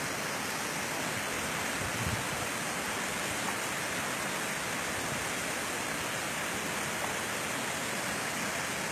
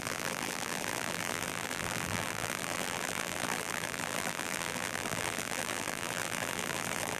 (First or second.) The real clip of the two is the first